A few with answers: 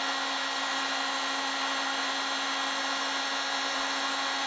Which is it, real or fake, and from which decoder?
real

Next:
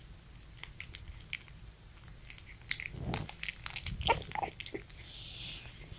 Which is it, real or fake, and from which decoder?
real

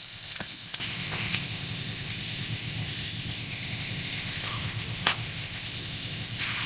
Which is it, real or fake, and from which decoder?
fake, codec, ZipCodec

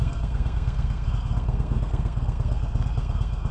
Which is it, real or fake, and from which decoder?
fake, codec, SNAC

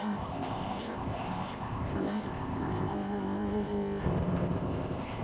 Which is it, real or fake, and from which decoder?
fake, codec, ZipCodec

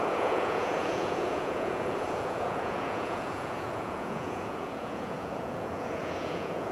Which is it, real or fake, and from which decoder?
fake, vocoder, Vocos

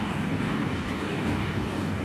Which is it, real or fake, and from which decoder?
fake, codec, DAC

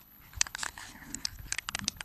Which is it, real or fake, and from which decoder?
fake, codec, HILCodec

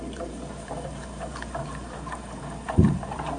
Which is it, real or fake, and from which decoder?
fake, vocoder, BigVGAN v2